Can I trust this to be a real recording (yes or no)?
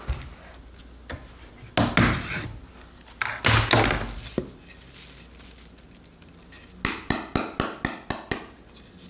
yes